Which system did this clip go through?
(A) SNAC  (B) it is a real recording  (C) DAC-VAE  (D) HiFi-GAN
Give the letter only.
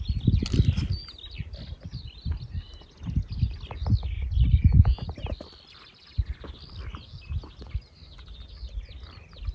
B